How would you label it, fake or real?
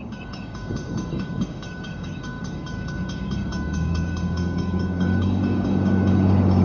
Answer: fake